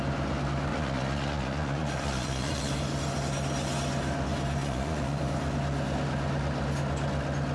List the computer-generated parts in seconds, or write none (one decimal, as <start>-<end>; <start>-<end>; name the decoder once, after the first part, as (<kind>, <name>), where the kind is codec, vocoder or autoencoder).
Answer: 0.7-2.7 (vocoder, Vocos); 4.6-5.2